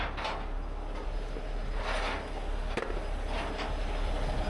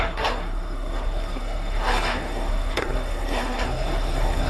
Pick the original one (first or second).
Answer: first